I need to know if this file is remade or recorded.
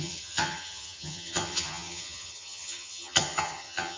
remade